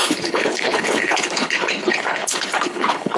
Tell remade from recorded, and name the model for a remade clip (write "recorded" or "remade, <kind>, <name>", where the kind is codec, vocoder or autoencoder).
remade, codec, HILCodec